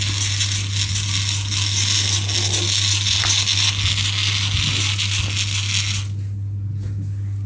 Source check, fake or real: real